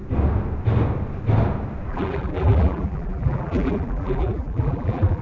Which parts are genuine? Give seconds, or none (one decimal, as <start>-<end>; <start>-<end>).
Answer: 0.0-1.9